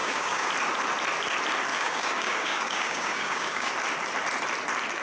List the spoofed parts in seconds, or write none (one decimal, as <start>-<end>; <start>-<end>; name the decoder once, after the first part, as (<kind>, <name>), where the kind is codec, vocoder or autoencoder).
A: 0.0-0.5 (codec, DAC); 1.7-3.7